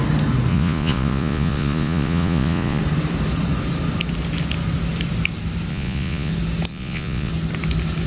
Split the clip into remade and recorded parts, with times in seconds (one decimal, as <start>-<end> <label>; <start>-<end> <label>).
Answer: 0.0-0.5 recorded; 0.5-2.8 remade; 2.8-5.7 recorded; 5.7-6.3 remade; 6.3-6.7 recorded; 6.7-7.3 remade; 7.3-8.1 recorded